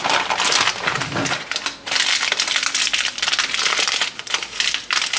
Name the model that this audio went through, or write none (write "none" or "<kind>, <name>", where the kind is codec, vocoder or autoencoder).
none